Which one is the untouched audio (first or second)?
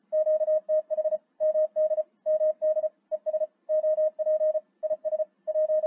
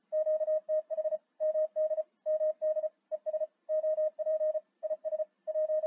first